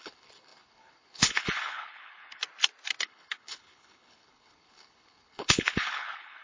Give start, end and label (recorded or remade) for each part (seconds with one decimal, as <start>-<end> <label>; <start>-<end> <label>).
0.0-2.4 remade; 2.4-3.0 recorded; 3.0-6.4 remade